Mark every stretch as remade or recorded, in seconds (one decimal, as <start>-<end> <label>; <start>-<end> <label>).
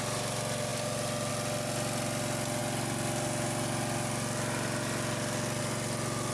0.0-6.3 recorded